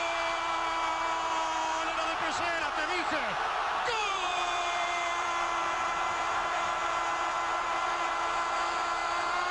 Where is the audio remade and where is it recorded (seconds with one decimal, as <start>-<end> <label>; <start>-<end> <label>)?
0.0-4.0 recorded; 4.0-6.9 remade; 6.9-9.0 recorded; 9.0-9.5 remade